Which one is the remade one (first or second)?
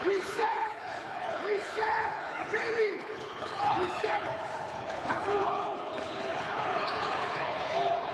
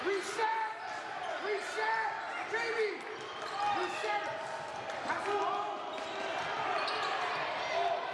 first